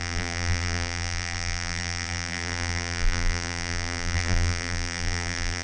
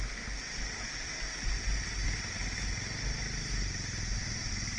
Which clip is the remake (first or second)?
first